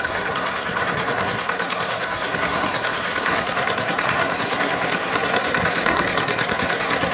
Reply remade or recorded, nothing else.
remade